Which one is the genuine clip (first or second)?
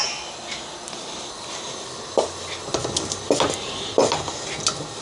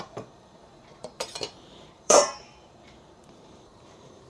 first